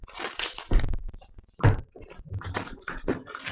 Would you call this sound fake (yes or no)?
yes